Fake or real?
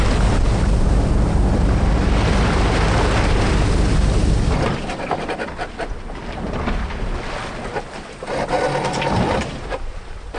real